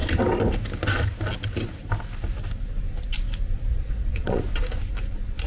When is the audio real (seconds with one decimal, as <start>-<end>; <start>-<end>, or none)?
0.0-3.7; 4.4-5.5